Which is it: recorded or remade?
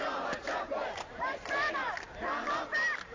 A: recorded